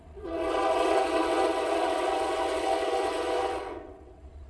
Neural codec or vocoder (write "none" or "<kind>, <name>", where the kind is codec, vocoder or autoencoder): vocoder, WaveNeXt